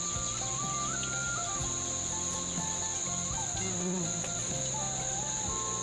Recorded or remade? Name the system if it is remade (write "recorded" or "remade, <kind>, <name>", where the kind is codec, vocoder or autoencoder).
recorded